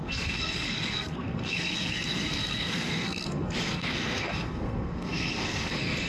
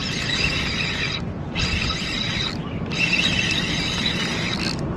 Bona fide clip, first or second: second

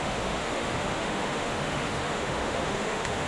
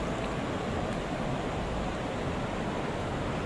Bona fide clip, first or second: second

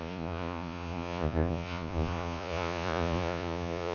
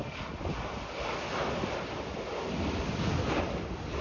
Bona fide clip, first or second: second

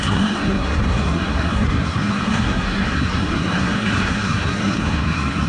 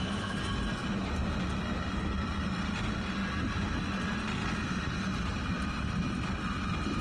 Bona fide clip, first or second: second